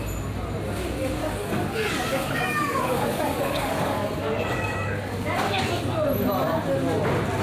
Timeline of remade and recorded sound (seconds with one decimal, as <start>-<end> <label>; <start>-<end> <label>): 0.0-1.2 recorded; 1.2-5.6 remade; 5.6-7.4 recorded